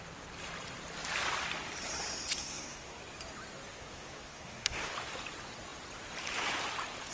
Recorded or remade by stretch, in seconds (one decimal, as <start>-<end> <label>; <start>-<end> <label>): 0.0-2.4 recorded; 2.4-3.0 remade; 3.0-3.7 recorded; 3.7-4.9 remade; 4.9-7.1 recorded